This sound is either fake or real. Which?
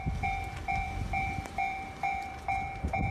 fake